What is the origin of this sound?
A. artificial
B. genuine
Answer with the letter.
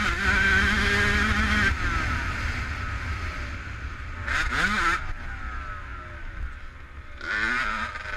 B